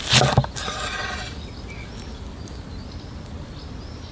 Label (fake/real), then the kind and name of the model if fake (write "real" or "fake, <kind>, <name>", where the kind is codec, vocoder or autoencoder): real